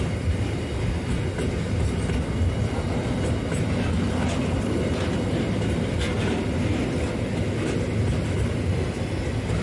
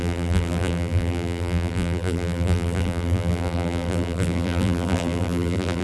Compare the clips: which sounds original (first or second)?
first